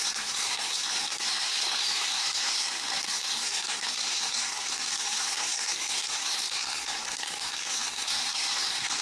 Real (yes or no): no